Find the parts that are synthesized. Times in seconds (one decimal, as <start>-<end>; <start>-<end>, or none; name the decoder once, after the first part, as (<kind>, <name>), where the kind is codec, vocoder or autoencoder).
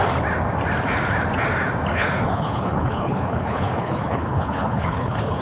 1.9-5.4 (codec, HILCodec)